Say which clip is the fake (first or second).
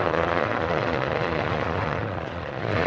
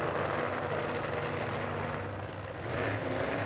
first